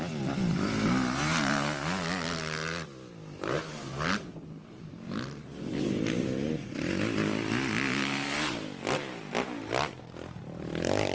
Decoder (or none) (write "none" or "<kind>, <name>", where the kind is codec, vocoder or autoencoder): none